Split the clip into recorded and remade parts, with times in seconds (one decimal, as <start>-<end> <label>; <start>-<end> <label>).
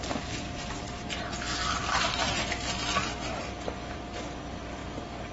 0.0-1.6 recorded; 1.6-3.5 remade; 3.5-5.3 recorded